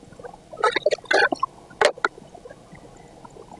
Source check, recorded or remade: recorded